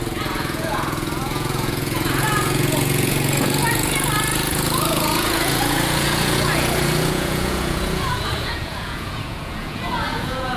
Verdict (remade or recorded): remade